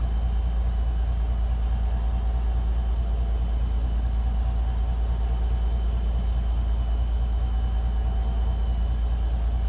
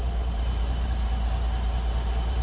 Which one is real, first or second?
first